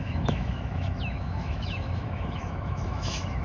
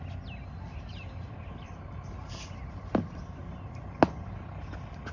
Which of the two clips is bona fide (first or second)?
second